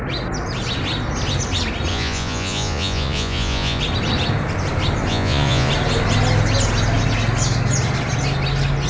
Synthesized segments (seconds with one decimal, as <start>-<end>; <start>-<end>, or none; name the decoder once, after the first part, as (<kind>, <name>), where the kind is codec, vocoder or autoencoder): 1.9-3.8 (vocoder, Vocos); 5.1-5.7